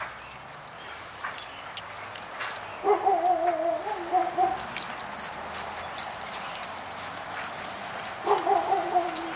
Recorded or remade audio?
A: recorded